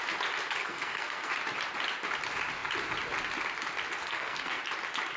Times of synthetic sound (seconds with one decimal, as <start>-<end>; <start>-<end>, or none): 0.6-1.3; 4.0-4.6